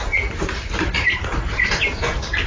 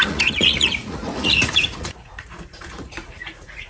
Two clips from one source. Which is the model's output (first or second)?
second